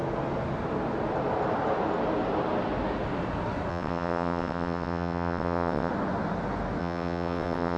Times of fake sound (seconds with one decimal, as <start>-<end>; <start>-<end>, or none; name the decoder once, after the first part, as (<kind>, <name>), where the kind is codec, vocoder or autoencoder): 3.7-5.9 (vocoder, WaveNeXt); 6.8-7.8